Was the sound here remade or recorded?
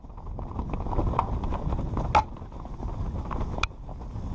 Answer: recorded